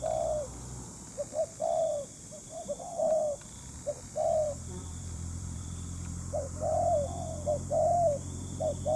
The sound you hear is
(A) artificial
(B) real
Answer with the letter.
A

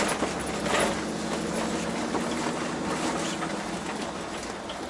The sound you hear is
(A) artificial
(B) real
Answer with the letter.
B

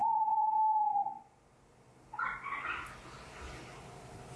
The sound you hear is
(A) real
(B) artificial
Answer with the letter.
A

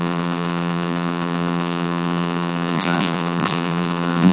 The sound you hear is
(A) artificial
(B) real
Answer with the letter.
A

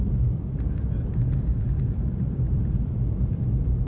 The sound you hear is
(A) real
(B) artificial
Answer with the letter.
B